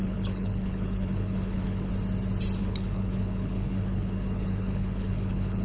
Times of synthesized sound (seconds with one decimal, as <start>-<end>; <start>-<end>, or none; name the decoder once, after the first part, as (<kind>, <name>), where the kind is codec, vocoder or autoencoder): 0.0-1.9 (codec, HILCodec); 2.6-5.6